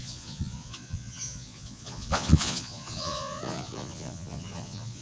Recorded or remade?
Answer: remade